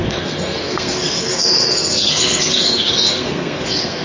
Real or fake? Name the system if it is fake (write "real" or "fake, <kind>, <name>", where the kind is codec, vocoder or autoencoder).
fake, codec, SNAC